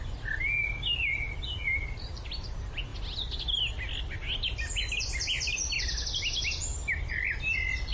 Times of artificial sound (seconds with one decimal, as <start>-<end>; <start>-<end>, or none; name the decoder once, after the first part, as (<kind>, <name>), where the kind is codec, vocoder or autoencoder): none